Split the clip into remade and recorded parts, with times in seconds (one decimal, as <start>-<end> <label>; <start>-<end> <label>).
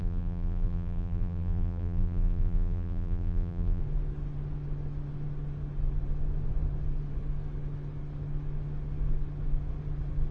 0.0-3.8 remade; 3.8-10.3 recorded